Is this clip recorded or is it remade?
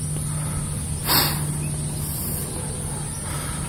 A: recorded